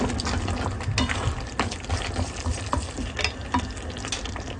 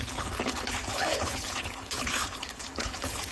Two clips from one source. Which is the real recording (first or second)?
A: first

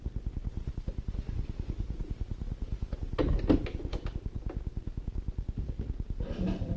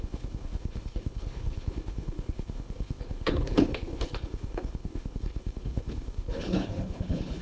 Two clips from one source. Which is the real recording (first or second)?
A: first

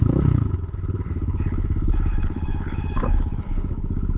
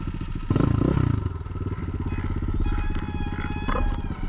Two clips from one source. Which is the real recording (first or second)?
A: second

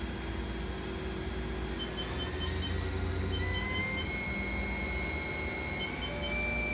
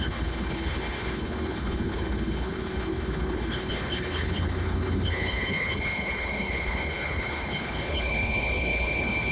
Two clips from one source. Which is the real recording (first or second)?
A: first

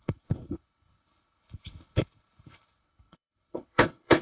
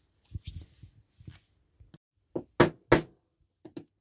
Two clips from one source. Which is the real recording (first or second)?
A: second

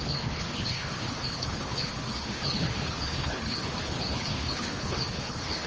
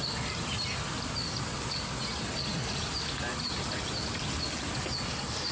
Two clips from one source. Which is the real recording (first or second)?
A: second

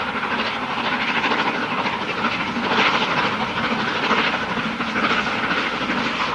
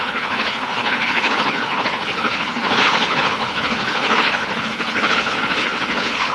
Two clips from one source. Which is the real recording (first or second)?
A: first